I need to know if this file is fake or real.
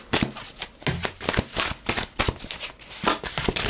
real